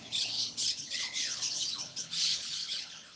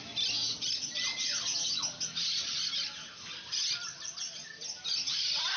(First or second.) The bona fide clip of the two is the second